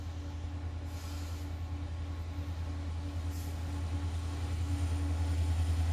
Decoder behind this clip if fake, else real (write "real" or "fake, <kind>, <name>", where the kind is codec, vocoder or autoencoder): real